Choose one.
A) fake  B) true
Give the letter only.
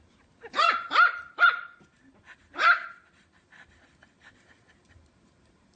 A